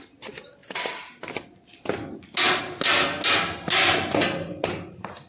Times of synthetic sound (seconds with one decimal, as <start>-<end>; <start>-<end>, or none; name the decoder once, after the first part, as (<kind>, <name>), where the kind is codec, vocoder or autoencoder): none